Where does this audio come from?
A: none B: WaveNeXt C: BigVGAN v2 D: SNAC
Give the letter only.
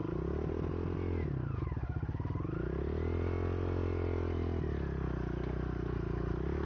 A